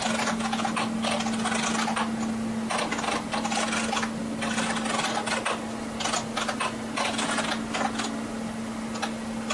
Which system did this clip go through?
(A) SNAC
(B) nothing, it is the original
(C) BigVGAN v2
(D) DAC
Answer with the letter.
B